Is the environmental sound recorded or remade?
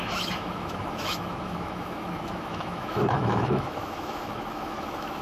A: remade